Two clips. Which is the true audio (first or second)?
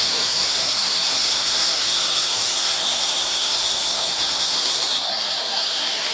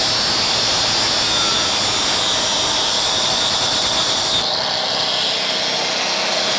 second